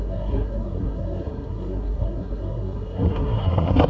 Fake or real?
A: fake